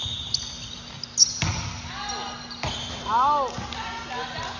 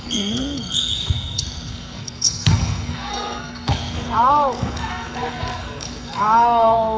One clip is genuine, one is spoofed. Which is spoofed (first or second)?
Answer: second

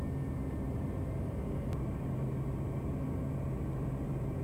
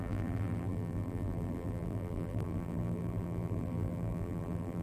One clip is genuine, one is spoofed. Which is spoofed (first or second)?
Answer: second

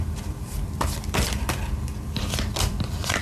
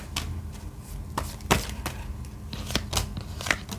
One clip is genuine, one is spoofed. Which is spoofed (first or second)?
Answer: first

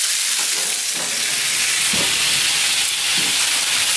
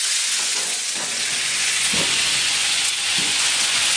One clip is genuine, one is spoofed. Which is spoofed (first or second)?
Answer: second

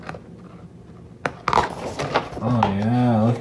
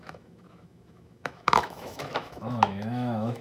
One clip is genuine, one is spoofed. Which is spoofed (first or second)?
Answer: second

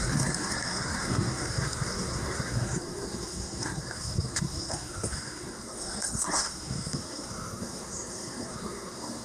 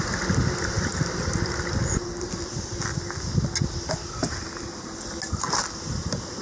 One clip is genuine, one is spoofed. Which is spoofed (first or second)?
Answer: first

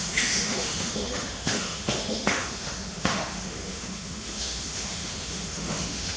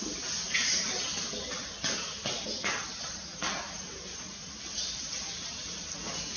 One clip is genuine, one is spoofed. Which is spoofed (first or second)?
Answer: first